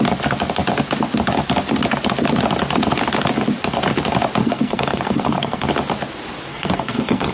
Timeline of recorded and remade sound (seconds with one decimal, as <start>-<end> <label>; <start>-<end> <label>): 0.0-4.4 recorded; 4.4-5.7 remade; 5.7-6.5 recorded; 6.5-7.3 remade